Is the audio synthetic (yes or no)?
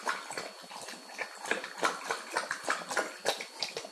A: no